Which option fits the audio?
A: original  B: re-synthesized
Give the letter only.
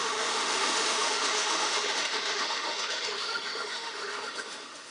B